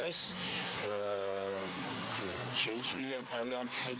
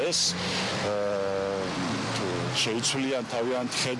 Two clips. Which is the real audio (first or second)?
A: second